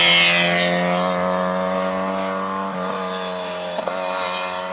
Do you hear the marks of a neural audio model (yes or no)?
no